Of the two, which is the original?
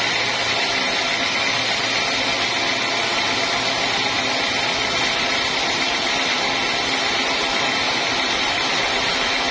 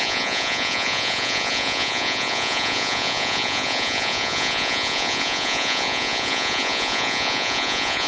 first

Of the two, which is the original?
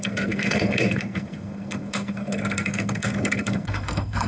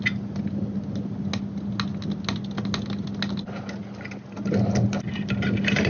second